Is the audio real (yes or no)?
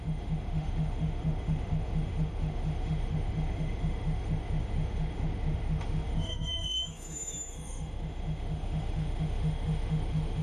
no